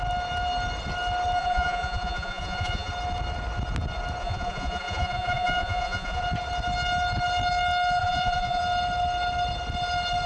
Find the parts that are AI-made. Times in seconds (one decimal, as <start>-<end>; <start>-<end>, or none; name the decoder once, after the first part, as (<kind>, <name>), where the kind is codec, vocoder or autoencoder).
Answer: 1.4-2.9 (vocoder, Vocos); 4.2-6.2; 8.0-8.6